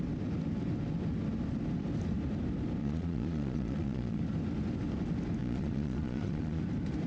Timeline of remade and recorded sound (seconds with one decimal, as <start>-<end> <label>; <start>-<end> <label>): 0.0-2.8 recorded; 2.8-4.2 remade; 4.2-5.4 recorded; 5.4-6.6 remade; 6.6-7.1 recorded